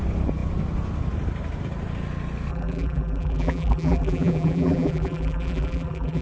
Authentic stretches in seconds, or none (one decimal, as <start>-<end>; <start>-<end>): 0.0-2.5